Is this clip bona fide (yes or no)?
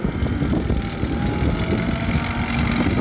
yes